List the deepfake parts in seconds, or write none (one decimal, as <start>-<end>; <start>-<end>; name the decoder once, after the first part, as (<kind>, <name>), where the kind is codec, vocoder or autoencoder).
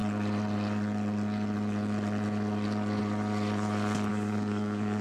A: 4.1-5.0 (codec, DAC)